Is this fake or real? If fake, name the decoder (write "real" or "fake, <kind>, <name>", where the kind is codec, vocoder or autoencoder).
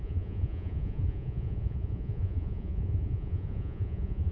fake, vocoder, Vocos